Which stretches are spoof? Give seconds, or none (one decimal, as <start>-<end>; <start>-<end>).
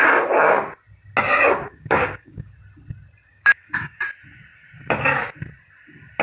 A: 1.6-2.5; 3.3-4.0